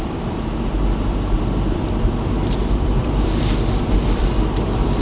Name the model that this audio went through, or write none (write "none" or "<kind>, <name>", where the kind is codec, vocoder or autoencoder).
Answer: vocoder, BigVGAN v2